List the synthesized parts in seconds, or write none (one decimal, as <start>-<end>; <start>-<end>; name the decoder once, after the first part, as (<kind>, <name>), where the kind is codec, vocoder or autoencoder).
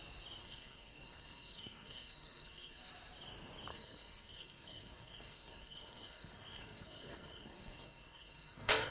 0.4-2.9 (codec, SNAC); 3.7-8.9